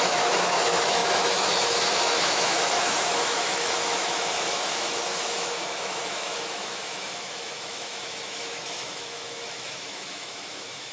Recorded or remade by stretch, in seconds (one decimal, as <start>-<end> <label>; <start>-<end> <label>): 0.0-10.9 remade